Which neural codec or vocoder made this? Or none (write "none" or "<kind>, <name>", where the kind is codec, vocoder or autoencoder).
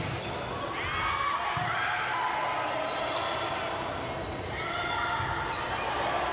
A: none